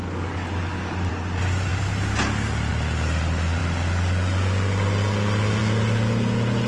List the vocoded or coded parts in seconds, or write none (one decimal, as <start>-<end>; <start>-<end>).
0.0-1.1